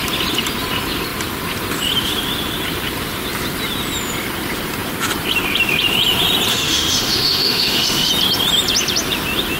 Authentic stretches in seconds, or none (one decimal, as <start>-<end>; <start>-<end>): 0.0-6.5; 8.1-9.6